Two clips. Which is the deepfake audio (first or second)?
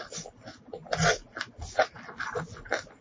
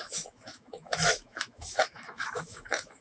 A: second